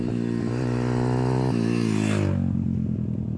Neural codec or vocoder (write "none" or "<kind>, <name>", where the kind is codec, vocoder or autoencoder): none